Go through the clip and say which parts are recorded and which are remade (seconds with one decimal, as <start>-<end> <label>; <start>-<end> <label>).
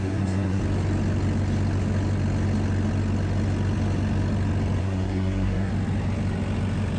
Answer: 0.0-0.6 remade; 0.6-4.8 recorded; 4.8-5.7 remade; 5.7-7.0 recorded